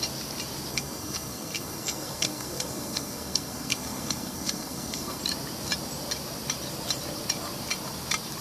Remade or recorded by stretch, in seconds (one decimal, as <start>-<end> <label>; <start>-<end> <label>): 0.0-0.7 recorded; 0.7-5.2 remade; 5.2-8.4 recorded